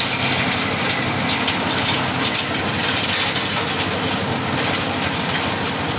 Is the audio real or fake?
real